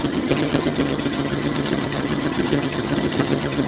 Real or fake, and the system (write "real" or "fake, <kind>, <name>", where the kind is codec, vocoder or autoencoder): fake, vocoder, HiFi-GAN